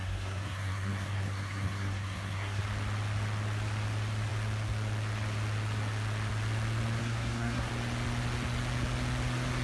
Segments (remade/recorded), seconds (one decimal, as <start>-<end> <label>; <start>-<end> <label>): 0.0-2.6 remade; 2.6-7.0 recorded; 7.0-7.7 remade; 7.7-9.6 recorded